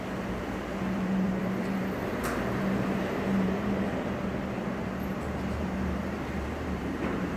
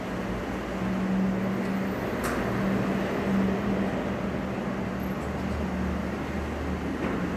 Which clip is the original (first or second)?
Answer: second